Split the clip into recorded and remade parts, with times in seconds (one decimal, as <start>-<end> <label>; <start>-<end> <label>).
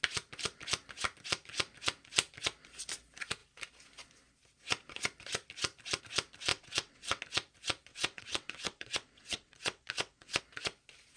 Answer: 0.0-6.5 recorded; 6.5-7.2 remade; 7.2-7.9 recorded; 7.9-10.4 remade; 10.4-11.2 recorded